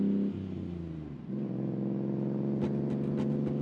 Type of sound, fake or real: real